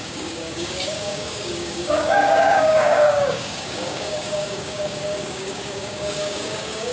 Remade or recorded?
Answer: remade